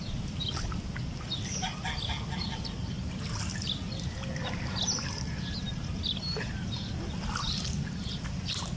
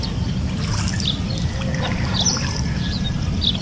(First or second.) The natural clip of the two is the first